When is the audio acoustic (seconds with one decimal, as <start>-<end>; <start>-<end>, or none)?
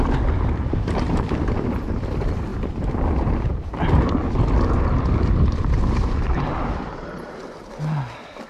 none